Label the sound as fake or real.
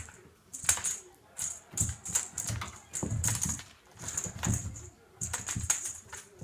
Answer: fake